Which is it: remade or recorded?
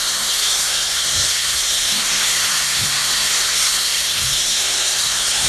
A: remade